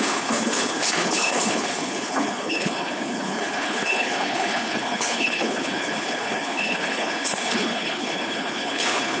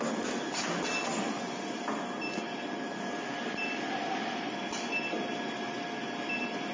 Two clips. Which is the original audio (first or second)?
second